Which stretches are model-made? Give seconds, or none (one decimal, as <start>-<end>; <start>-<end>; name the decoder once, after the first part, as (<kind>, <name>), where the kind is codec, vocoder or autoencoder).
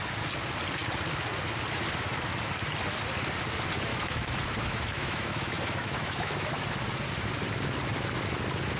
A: 3.9-6.5 (autoencoder, DAC-VAE)